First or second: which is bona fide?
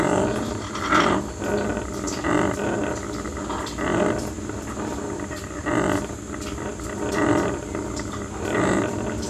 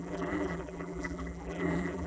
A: first